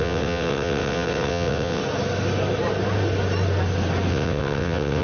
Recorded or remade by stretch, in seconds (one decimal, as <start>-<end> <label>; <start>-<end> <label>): 0.0-1.8 remade; 1.8-4.1 recorded; 4.1-5.0 remade